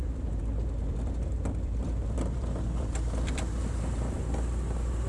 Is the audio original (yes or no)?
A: no